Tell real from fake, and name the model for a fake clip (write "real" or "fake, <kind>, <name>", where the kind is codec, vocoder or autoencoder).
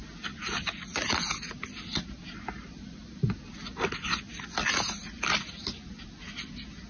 real